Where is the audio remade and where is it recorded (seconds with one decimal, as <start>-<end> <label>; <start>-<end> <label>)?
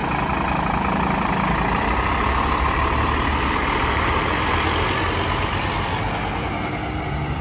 0.0-7.4 recorded